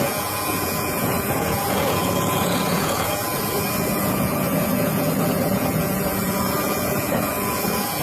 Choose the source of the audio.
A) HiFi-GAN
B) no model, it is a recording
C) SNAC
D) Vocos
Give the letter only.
D